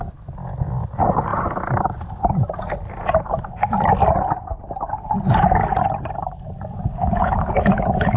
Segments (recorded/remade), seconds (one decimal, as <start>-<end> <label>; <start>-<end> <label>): 0.0-8.2 recorded